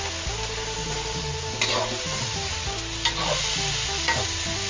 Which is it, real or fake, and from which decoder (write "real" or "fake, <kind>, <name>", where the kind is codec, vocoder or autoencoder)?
real